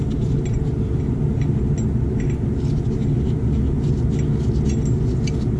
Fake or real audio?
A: real